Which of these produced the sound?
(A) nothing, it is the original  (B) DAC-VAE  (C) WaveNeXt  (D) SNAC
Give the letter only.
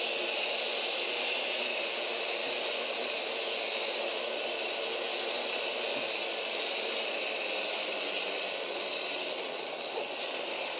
A